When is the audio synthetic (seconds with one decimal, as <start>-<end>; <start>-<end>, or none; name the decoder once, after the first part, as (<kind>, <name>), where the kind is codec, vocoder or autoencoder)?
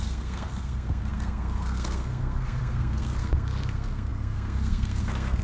0.0-5.4 (codec, SNAC)